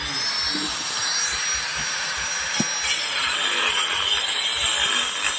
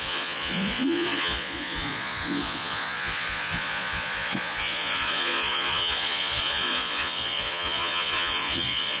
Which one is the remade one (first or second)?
second